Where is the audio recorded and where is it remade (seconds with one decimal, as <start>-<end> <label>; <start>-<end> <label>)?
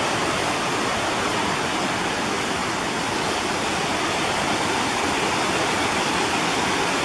0.0-2.6 recorded; 2.6-7.0 remade